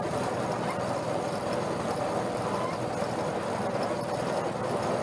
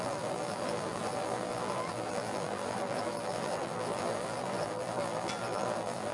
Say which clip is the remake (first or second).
second